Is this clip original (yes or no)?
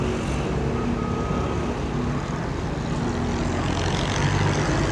yes